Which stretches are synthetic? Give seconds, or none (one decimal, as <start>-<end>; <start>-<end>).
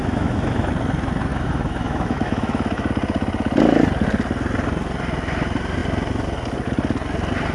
0.0-0.7; 1.3-2.9